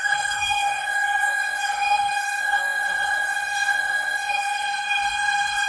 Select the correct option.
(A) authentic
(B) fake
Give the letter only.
B